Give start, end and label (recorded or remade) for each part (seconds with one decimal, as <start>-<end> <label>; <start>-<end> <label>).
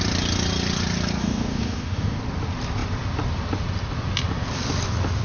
0.0-1.2 recorded; 1.2-2.2 remade; 2.2-5.2 recorded